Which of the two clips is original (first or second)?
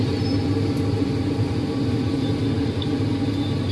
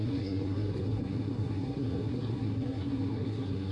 first